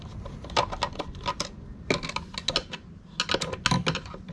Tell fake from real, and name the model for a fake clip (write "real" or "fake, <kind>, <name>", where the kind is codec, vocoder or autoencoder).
real